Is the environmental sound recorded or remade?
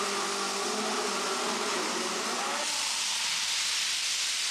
recorded